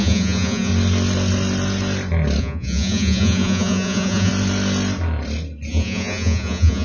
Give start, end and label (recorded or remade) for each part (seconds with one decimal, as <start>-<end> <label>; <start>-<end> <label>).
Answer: 0.0-0.7 remade; 0.7-2.4 recorded; 2.4-4.3 remade; 4.3-5.7 recorded; 5.7-6.8 remade